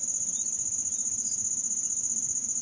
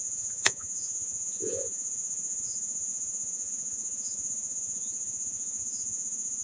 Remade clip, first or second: second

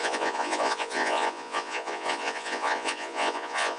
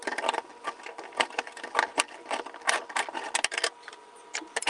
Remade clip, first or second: first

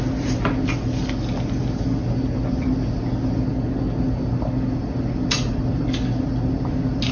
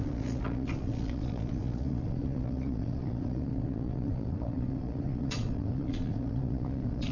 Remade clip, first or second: second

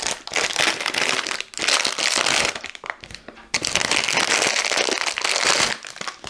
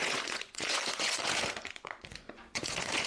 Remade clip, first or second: second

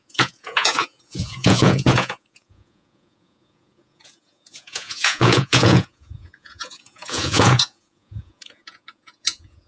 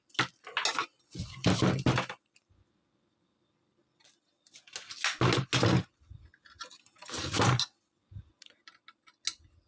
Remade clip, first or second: first